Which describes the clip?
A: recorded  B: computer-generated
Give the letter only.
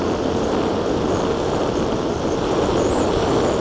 A